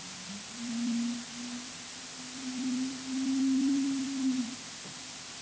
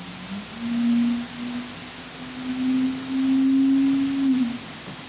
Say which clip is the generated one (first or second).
first